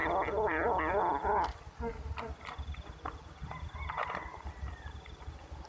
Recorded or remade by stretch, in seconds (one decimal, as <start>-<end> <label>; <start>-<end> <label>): 0.0-5.7 recorded